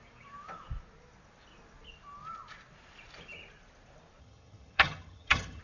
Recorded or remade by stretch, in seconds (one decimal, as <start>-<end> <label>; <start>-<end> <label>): 0.0-4.2 recorded; 4.2-5.6 remade